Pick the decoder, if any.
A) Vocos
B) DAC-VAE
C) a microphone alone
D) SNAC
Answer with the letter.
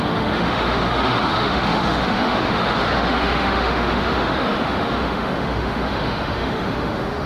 B